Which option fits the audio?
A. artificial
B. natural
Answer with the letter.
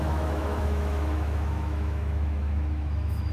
A